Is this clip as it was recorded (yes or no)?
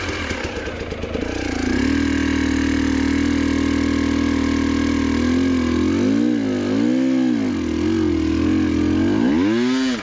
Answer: yes